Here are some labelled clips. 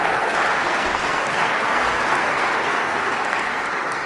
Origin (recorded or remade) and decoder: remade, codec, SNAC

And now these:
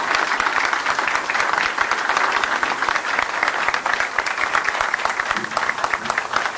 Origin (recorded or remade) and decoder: recorded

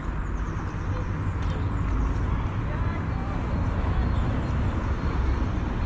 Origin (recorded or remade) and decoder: recorded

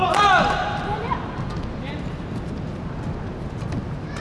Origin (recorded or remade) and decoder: recorded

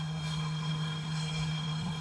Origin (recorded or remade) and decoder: remade, codec, SNAC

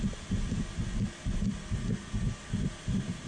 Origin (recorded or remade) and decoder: recorded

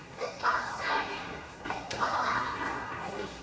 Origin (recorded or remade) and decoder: remade, codec, SNAC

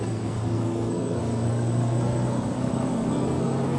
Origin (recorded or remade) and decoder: remade, codec, SNAC